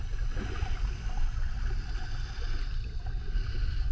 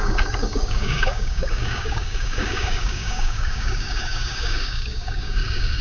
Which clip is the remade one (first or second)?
second